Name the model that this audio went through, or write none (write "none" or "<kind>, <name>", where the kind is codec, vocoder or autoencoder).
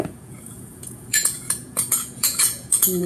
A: vocoder, Vocos